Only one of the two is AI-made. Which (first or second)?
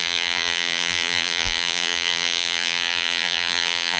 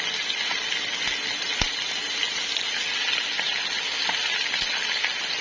first